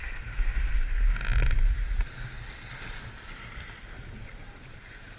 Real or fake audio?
real